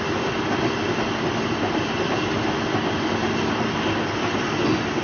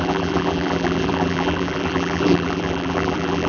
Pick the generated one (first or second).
second